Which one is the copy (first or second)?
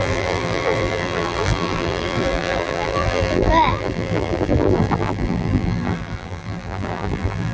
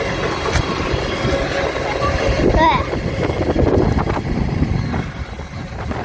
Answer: first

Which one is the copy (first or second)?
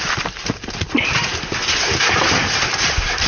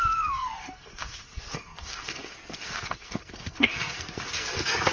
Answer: second